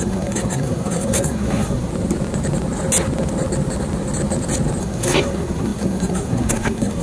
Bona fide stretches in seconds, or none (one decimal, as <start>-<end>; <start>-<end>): 1.9-4.8